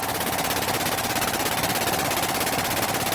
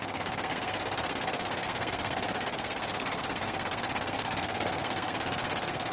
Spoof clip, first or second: second